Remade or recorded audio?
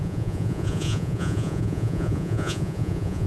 remade